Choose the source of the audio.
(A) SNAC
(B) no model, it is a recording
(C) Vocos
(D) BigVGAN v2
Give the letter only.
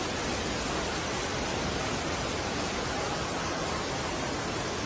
B